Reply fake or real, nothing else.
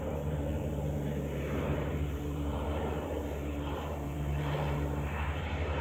fake